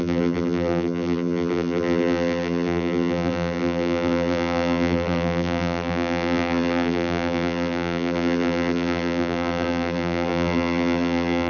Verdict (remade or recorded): remade